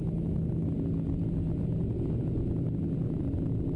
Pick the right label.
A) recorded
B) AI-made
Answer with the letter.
A